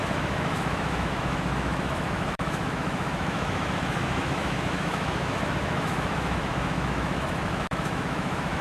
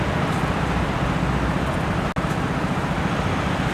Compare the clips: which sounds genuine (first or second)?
second